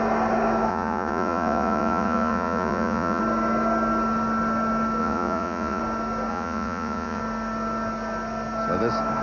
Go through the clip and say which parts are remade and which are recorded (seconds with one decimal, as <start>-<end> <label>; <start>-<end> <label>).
0.0-0.7 recorded; 0.7-3.2 remade; 3.2-5.0 recorded; 5.0-5.8 remade; 5.8-6.3 recorded; 6.3-7.2 remade; 7.2-9.2 recorded